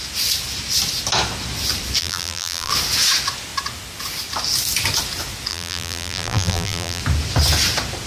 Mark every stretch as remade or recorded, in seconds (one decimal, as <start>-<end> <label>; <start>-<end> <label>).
0.0-2.0 recorded; 2.0-2.7 remade; 2.7-5.5 recorded; 5.5-7.0 remade; 7.0-8.1 recorded